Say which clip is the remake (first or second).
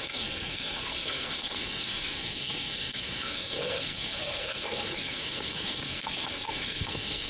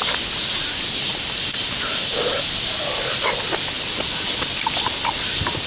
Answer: first